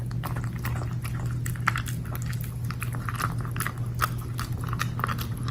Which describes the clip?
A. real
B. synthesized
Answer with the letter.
A